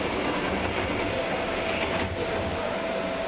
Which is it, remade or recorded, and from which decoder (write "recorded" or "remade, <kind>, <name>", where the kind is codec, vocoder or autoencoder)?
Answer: recorded